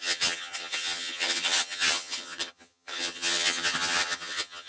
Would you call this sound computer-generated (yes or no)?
yes